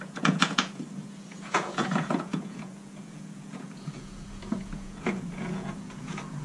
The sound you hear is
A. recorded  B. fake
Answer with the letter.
B